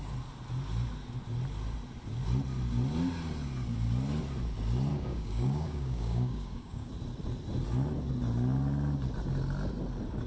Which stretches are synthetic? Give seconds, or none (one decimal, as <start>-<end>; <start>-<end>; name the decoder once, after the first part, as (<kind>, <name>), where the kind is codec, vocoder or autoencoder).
4.9-6.9 (codec, DAC)